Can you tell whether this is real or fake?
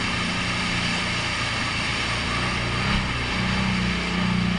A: real